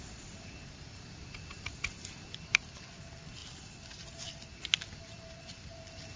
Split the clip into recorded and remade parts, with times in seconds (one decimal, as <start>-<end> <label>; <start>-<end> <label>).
0.0-6.2 recorded